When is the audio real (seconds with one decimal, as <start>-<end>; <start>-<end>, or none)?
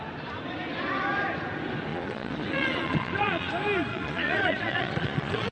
0.0-1.9; 3.5-3.9